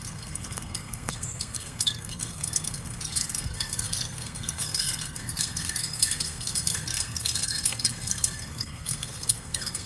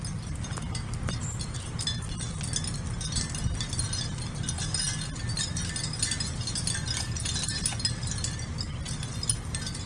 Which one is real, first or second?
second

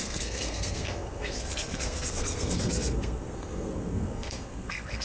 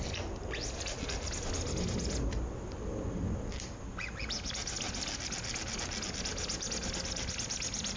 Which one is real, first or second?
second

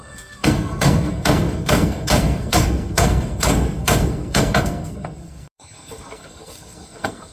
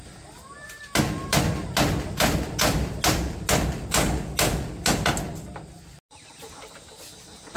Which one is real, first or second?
second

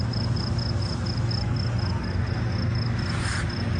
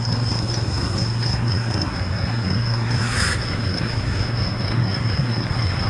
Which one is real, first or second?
first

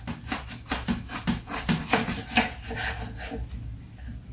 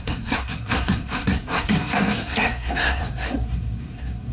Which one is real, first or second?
first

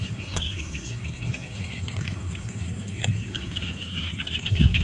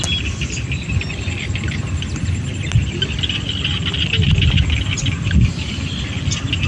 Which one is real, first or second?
second